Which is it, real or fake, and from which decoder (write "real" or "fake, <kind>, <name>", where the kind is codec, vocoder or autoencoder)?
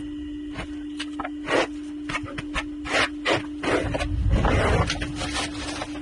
real